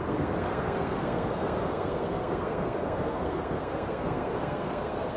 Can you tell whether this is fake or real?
fake